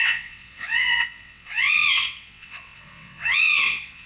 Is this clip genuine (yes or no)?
no